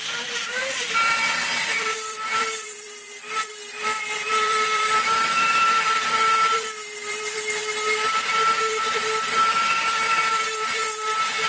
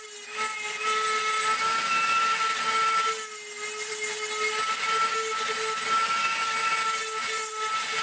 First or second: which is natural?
second